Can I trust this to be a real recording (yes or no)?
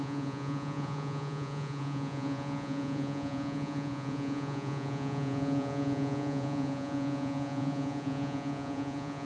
no